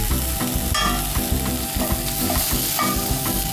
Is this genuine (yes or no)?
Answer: yes